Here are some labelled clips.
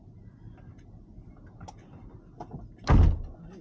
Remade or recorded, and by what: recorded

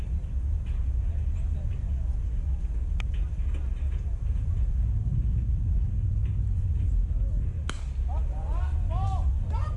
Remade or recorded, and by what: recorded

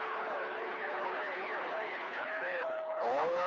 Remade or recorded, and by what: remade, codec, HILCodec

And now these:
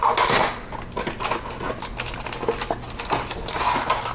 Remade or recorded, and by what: recorded